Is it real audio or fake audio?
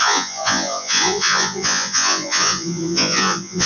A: fake